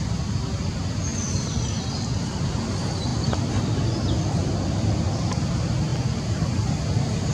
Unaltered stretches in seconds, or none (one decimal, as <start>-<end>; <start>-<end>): 0.0-3.1; 4.3-5.9

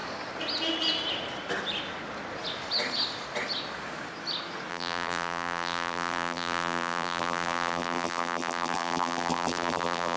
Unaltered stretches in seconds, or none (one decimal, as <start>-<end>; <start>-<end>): 0.0-4.7